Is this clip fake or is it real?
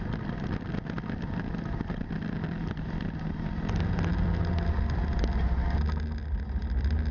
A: real